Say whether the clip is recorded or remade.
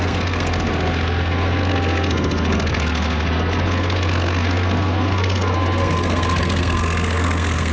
remade